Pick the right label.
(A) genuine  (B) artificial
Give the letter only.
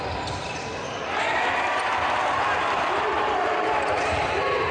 A